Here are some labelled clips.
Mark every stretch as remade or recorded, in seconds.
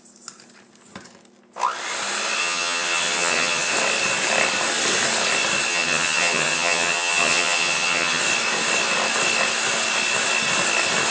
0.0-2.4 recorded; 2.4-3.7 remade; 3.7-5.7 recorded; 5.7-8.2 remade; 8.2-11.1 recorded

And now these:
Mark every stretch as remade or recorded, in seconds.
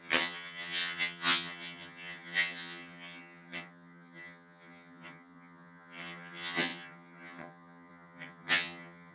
0.0-9.1 remade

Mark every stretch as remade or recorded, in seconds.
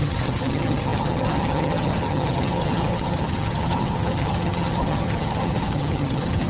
0.0-6.5 remade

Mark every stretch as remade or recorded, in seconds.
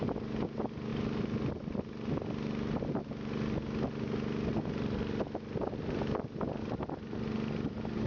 0.0-8.1 recorded